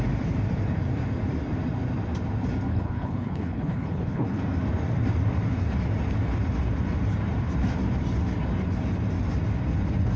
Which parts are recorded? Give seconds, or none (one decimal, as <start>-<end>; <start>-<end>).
0.0-2.7; 4.4-10.2